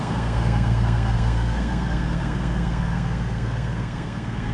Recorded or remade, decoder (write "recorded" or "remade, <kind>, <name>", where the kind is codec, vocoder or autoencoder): remade, codec, SNAC